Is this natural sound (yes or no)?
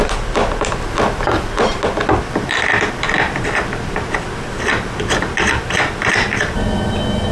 no